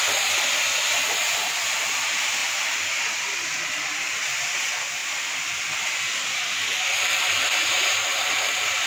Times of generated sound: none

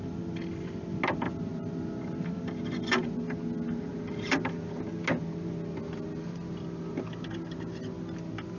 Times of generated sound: none